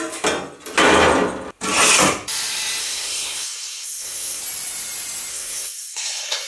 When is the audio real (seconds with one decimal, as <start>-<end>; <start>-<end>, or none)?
0.0-2.8; 4.4-5.3